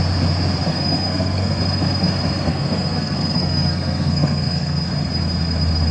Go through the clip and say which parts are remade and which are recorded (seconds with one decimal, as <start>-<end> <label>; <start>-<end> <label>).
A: 0.0-0.7 recorded; 0.7-1.6 remade; 1.6-2.5 recorded; 2.5-4.9 remade; 4.9-5.9 recorded